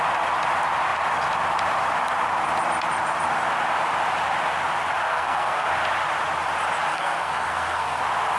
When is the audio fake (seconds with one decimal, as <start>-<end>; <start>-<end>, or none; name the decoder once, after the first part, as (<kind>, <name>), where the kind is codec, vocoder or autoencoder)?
5.1-5.7 (codec, SNAC); 6.9-8.0